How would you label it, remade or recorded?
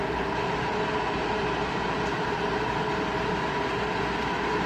recorded